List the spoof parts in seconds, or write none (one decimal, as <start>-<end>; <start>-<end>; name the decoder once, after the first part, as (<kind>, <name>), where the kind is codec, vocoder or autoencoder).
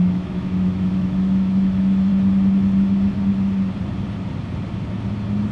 0.0-2.1 (autoencoder, DAC-VAE)